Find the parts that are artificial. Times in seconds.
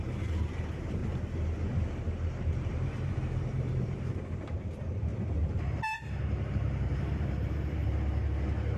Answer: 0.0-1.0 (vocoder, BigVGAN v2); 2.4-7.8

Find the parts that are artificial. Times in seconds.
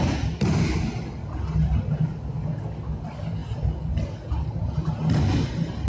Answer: none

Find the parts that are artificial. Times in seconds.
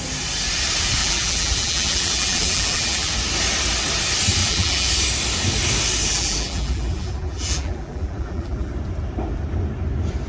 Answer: 1.0-3.1 (vocoder, BigVGAN v2); 4.4-4.9; 6.1-8.7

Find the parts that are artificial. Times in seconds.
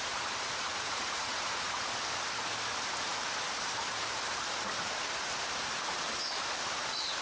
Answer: 0.7-1.7 (vocoder, Vocos)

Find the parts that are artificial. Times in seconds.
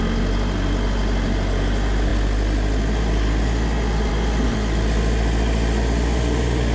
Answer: none